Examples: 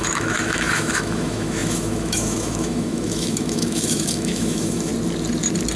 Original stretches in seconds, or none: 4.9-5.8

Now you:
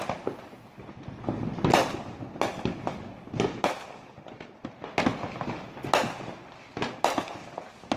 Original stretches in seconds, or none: 0.0-8.0

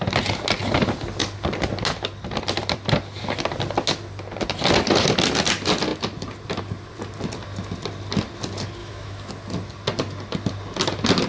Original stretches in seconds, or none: 0.0-8.8; 9.3-11.3